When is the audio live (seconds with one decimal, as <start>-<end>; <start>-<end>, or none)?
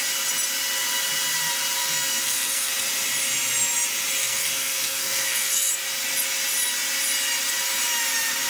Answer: 0.0-1.8; 2.7-4.2; 5.7-8.5